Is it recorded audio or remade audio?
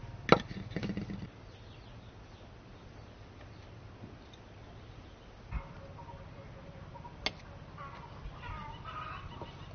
recorded